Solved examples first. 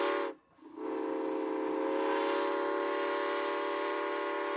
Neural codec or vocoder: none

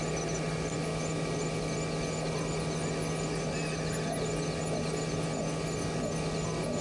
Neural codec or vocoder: none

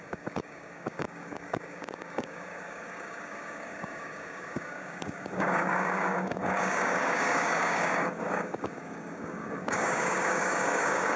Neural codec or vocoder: codec, DAC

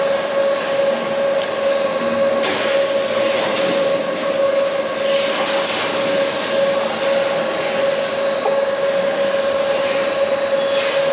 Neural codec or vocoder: none